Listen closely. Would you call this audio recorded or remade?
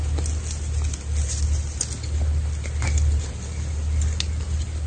recorded